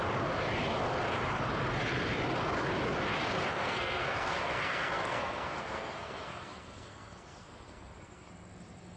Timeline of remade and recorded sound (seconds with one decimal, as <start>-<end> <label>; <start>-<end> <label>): 0.0-3.5 recorded; 3.5-8.3 remade; 8.3-9.0 recorded